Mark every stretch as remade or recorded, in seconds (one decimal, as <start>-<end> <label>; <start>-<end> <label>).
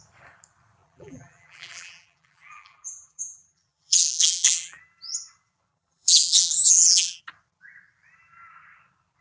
0.0-0.8 recorded; 0.8-4.8 remade; 4.8-5.7 recorded; 5.7-7.2 remade; 7.2-9.2 recorded